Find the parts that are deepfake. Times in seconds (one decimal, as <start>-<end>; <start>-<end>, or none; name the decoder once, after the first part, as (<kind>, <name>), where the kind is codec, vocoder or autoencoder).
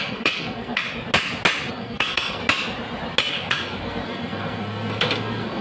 0.0-0.8 (codec, SNAC); 1.7-2.4; 3.3-5.6